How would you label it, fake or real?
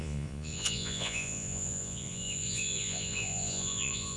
fake